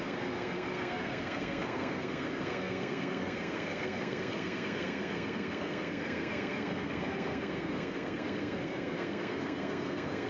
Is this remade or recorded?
remade